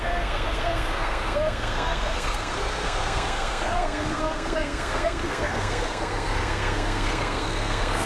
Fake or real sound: fake